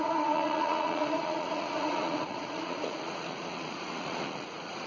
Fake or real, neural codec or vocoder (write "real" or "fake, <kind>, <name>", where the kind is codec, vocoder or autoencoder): fake, vocoder, Vocos